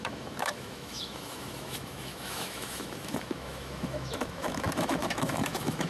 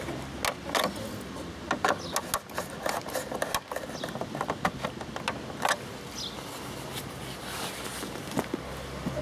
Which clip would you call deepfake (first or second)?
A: first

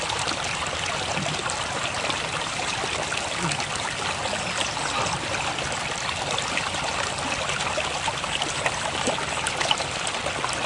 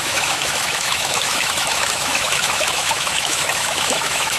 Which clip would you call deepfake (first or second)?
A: second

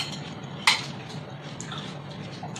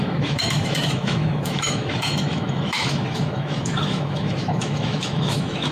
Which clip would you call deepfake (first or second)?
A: second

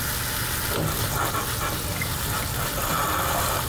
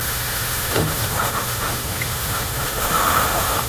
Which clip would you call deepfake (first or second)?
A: second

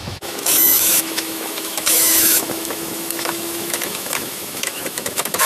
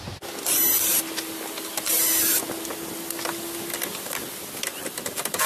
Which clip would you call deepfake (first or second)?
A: first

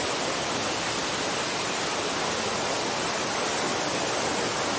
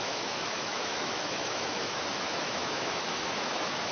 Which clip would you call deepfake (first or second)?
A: second